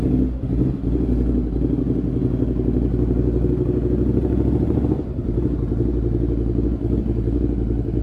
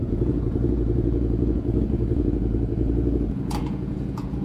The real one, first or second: first